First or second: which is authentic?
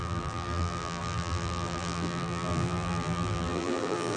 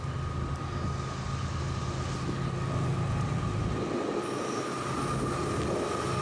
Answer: second